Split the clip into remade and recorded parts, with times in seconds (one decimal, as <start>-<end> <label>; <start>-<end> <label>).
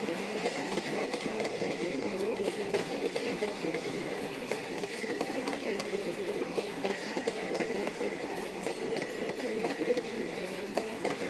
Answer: 0.0-8.7 remade; 8.7-9.4 recorded; 9.4-11.3 remade